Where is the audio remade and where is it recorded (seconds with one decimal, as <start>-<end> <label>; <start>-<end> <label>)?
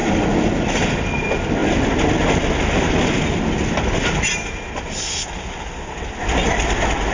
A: 0.0-7.1 recorded